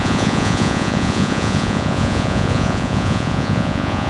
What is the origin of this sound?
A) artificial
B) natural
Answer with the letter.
A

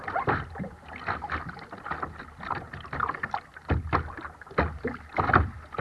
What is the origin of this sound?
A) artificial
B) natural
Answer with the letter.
B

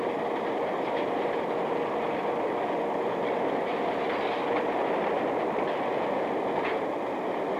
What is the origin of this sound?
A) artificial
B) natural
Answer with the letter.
B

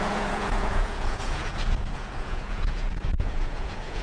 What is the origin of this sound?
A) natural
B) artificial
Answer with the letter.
B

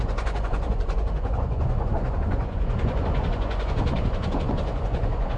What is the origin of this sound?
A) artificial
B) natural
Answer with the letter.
A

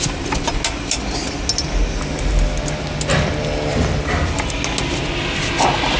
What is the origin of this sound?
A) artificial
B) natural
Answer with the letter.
B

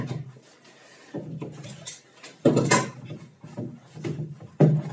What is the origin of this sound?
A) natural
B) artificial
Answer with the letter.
A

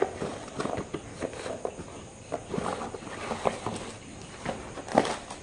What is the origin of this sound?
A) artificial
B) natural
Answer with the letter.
B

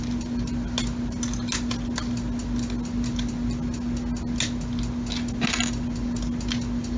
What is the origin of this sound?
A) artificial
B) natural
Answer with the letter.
B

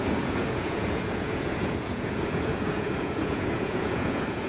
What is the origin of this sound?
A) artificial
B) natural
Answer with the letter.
A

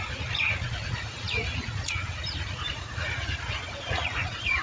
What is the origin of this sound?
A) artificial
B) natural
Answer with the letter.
A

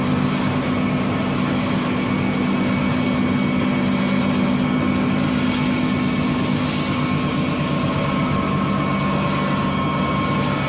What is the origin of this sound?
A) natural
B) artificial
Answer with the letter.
A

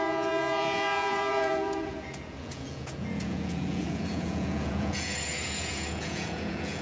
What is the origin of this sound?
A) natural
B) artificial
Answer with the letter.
B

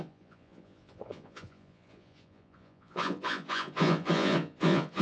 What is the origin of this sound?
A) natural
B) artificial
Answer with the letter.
B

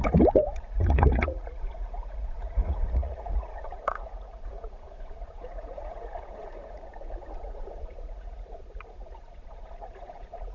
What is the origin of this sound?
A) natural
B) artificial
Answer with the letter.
B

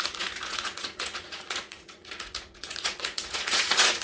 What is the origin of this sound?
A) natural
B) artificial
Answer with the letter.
B